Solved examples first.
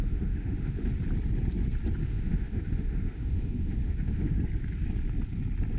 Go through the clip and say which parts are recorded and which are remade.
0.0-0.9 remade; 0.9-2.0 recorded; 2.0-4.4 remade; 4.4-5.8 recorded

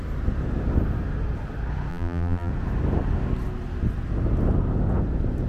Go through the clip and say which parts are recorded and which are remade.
0.0-1.9 recorded; 1.9-2.5 remade; 2.5-5.5 recorded